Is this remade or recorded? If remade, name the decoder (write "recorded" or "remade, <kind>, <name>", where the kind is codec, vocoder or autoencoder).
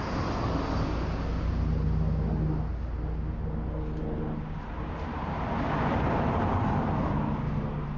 recorded